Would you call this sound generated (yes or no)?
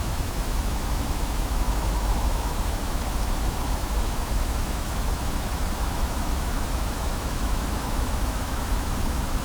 yes